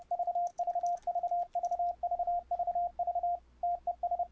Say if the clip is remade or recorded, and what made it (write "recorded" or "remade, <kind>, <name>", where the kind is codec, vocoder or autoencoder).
recorded